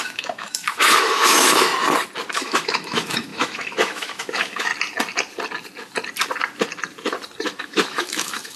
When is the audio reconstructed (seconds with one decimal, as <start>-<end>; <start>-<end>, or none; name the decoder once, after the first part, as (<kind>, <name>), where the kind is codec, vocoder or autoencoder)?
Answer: 0.0-1.7 (autoencoder, DAC-VAE); 2.3-4.7; 7.6-8.6

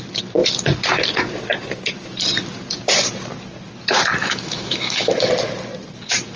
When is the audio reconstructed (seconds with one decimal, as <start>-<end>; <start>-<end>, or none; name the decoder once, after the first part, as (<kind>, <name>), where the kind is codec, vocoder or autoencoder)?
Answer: 4.2-5.3 (autoencoder, DAC-VAE)